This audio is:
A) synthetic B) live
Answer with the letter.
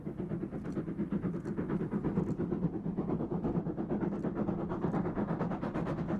B